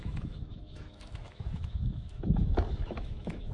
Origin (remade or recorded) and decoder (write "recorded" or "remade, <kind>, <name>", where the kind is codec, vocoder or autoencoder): remade, autoencoder, DAC-VAE